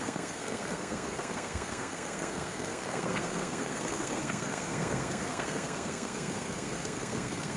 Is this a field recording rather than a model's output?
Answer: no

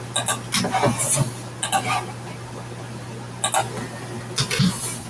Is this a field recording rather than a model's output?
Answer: yes